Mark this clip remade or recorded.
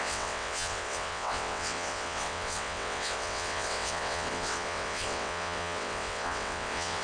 remade